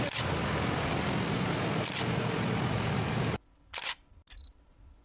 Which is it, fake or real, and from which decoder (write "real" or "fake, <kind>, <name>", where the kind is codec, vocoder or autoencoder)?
real